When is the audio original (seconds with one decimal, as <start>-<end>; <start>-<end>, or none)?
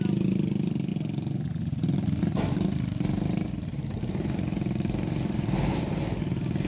0.0-6.7